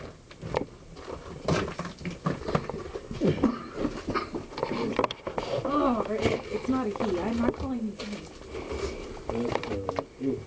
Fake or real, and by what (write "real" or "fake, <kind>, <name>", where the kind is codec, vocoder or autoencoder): real